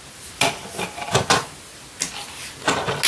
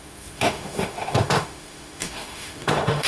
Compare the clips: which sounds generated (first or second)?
second